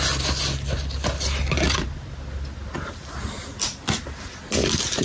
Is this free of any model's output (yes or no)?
yes